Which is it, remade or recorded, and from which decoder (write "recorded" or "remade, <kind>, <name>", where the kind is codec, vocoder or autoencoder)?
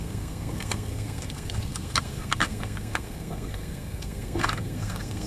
remade, codec, SNAC